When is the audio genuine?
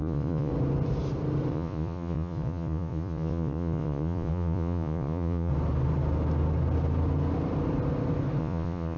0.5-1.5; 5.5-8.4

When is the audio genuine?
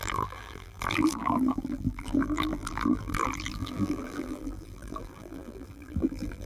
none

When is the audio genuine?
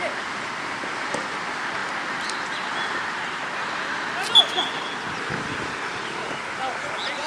0.0-7.3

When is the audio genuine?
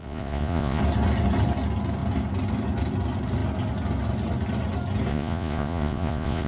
0.8-5.1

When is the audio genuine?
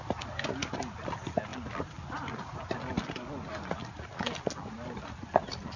0.0-5.8